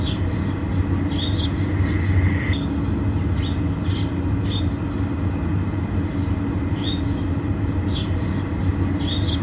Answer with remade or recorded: recorded